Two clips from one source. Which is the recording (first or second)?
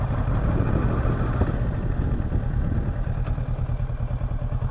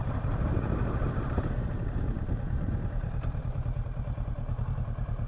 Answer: first